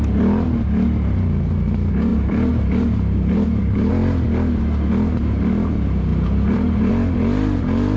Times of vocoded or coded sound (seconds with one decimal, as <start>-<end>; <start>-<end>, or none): 2.1-3.9; 6.1-6.9